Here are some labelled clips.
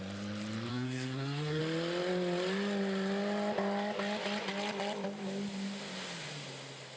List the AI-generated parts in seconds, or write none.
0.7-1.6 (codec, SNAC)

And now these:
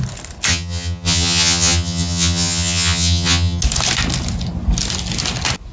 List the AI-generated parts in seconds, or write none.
0.5-3.6 (vocoder, HiFi-GAN)

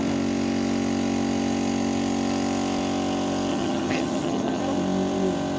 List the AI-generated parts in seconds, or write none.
3.5-4.6 (vocoder, HiFi-GAN)

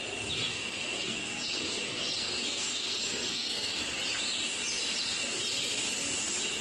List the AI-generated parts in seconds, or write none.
0.5-3.8 (codec, SNAC)

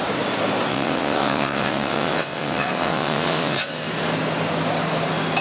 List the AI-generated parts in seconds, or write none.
0.7-3.9 (vocoder, WaveNeXt)

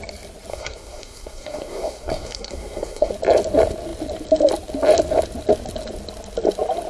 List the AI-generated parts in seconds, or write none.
0.5-3.1 (codec, SNAC)